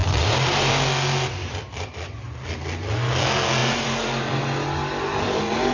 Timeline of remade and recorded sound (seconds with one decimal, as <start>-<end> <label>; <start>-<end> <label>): 0.0-0.7 remade; 0.7-1.4 recorded; 1.4-2.5 remade; 2.5-3.6 recorded; 3.6-4.4 remade; 4.4-5.7 recorded